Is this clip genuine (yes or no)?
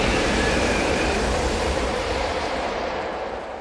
no